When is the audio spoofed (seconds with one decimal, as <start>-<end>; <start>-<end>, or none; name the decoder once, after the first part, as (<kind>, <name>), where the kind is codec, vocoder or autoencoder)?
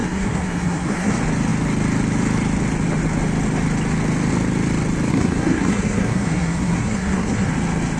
0.0-1.1 (codec, SNAC); 5.1-7.5